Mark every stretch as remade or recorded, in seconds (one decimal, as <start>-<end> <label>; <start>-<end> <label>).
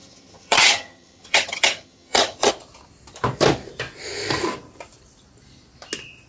0.0-2.5 remade; 2.5-6.3 recorded